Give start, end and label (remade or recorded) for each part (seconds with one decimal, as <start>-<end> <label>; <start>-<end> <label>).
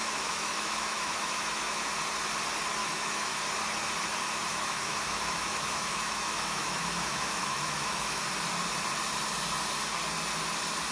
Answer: 0.0-1.9 remade; 1.9-2.8 recorded; 2.8-3.4 remade; 3.4-4.5 recorded; 4.5-8.2 remade; 8.2-10.9 recorded